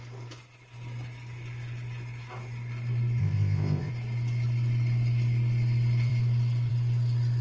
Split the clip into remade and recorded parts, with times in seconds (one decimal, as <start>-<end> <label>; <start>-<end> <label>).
0.0-3.2 recorded; 3.2-3.9 remade; 3.9-7.4 recorded